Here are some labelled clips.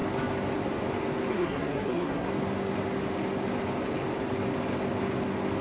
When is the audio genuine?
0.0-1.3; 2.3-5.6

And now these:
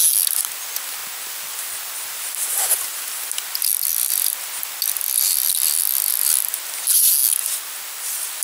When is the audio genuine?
0.0-8.4

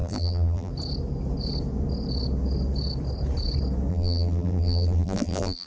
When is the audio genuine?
0.7-3.9

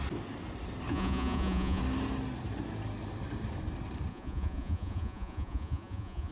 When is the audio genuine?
0.0-0.9; 1.8-4.1

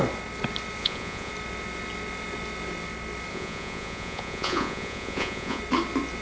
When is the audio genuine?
0.0-0.8; 1.3-3.3; 5.6-6.2

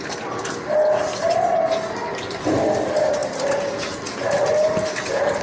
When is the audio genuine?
0.0-5.4